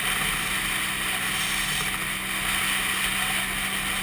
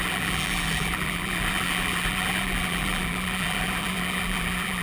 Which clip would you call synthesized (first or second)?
second